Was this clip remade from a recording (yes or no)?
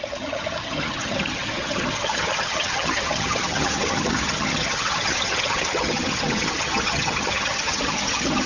yes